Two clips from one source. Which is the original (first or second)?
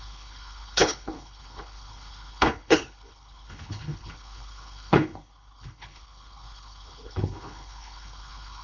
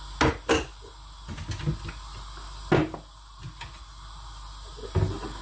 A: second